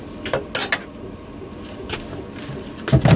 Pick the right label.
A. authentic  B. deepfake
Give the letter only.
A